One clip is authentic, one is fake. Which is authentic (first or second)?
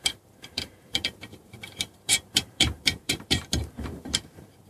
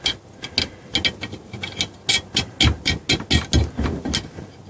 second